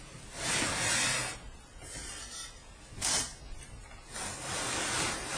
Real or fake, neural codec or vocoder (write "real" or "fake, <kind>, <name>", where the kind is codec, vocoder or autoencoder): real